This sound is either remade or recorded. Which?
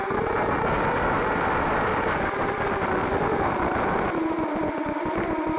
recorded